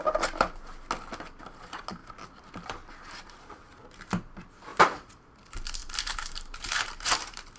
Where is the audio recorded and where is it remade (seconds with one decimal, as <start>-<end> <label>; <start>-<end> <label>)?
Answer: 0.0-4.7 recorded; 4.7-5.3 remade; 5.3-5.8 recorded; 5.8-7.6 remade